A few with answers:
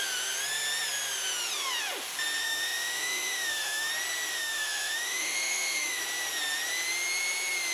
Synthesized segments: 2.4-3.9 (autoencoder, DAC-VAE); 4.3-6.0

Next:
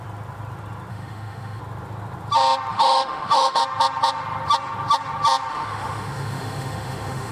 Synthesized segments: 0.9-1.6 (autoencoder, DAC-VAE); 2.7-3.6; 5.5-7.3

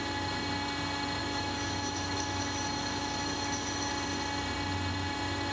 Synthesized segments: 1.2-3.9 (autoencoder, DAC-VAE)

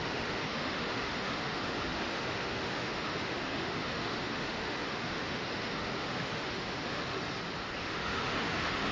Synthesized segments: 0.0-7.2 (autoencoder, DAC-VAE); 7.8-8.9

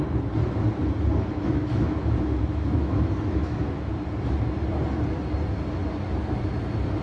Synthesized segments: 1.3-3.9 (autoencoder, DAC-VAE)

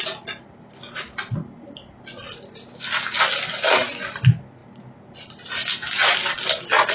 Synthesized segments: none

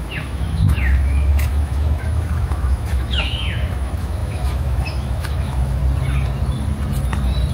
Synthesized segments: 0.0-5.8 (autoencoder, DAC-VAE)

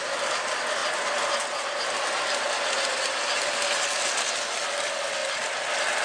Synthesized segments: none